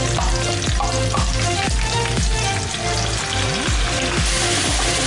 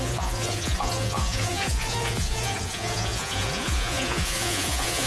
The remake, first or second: second